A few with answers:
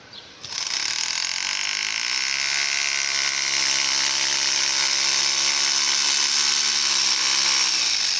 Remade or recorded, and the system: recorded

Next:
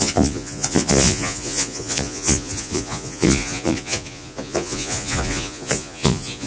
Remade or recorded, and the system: remade, vocoder, Vocos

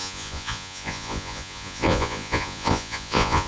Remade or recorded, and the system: remade, vocoder, Vocos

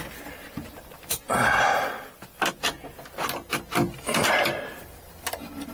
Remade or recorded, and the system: recorded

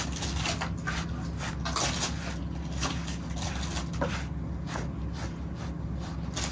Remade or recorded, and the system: recorded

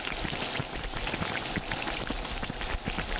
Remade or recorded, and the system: recorded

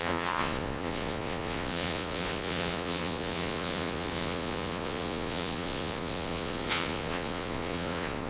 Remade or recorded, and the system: remade, vocoder, Vocos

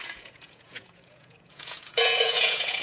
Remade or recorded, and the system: remade, vocoder, Vocos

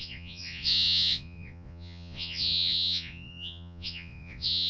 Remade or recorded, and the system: remade, vocoder, Vocos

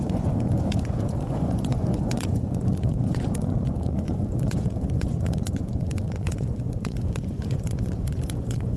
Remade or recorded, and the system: remade, vocoder, Vocos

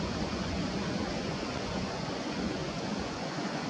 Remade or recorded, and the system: remade, vocoder, Vocos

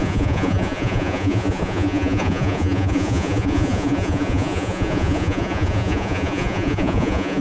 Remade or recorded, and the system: remade, vocoder, Vocos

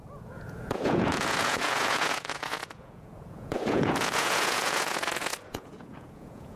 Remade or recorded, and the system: remade, vocoder, Vocos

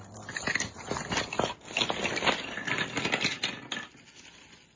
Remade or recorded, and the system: recorded